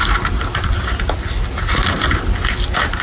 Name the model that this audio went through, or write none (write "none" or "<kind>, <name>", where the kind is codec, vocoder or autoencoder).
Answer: none